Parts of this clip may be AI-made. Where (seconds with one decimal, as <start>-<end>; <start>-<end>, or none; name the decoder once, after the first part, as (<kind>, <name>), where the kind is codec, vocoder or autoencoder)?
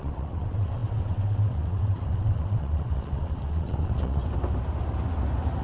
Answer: 0.0-4.2 (vocoder, WaveNeXt)